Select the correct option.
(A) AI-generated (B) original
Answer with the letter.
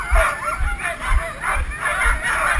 B